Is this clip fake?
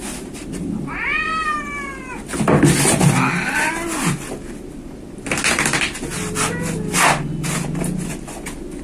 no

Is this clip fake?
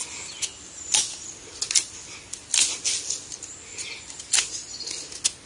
no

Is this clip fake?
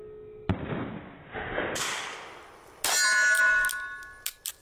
no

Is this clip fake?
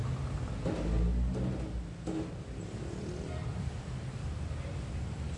no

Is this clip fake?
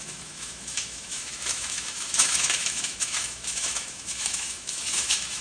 yes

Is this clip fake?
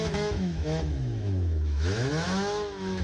yes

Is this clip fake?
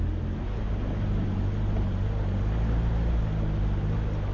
no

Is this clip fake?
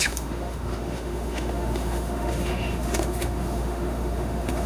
yes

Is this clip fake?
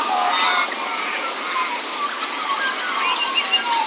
no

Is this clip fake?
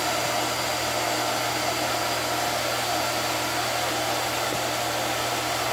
no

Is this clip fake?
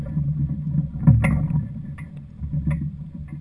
no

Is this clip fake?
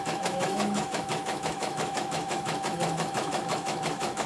yes